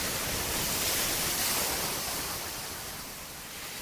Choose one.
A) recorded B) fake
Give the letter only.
B